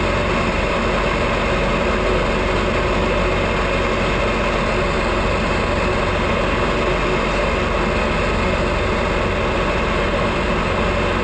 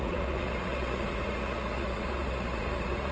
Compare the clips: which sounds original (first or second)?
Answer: first